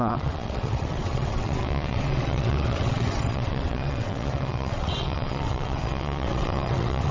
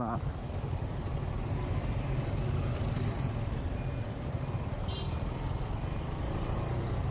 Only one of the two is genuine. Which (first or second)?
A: second